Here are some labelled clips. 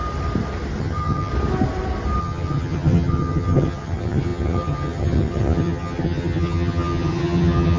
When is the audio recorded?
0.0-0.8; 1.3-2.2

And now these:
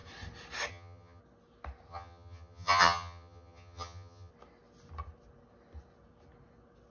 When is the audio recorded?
0.0-0.7; 1.2-1.9; 4.3-6.9

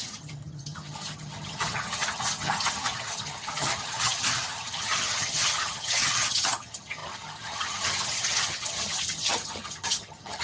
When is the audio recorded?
none

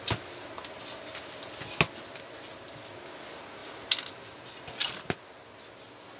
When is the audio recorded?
0.0-6.2

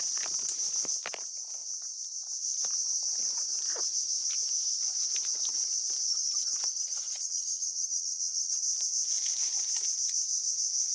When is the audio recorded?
0.0-6.1; 8.6-10.9

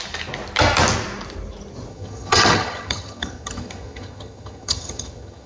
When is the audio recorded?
0.0-1.9

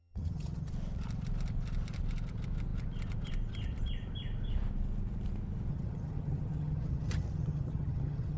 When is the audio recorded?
0.7-5.7

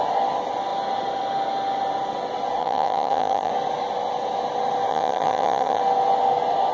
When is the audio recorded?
0.0-2.6; 3.5-4.9; 5.8-6.7